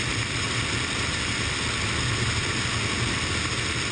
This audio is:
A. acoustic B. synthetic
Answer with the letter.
A